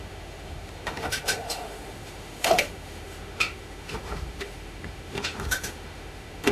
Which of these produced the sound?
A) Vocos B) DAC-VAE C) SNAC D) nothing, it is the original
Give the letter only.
B